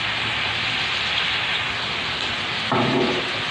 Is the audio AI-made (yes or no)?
no